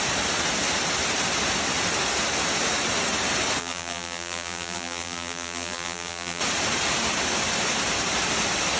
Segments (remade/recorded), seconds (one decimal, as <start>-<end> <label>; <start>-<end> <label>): 0.0-3.6 recorded; 3.6-6.4 remade; 6.4-8.8 recorded